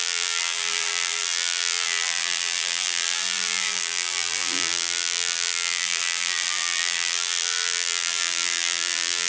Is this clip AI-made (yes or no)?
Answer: yes